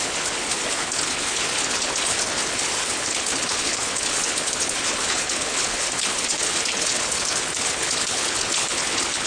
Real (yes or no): no